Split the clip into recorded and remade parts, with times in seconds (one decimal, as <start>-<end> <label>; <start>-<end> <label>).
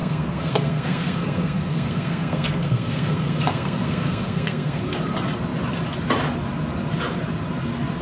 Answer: 0.0-4.8 remade; 4.8-8.0 recorded